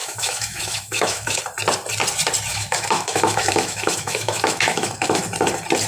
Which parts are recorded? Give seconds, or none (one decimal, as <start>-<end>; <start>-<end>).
1.4-2.5; 5.2-5.9